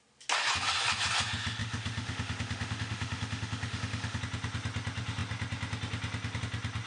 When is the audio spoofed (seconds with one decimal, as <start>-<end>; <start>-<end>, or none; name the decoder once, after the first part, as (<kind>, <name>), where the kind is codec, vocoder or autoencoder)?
1.6-4.2 (autoencoder, DAC-VAE)